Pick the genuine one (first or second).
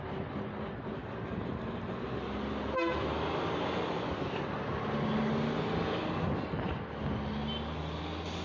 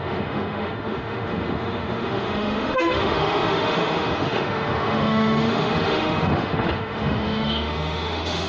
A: first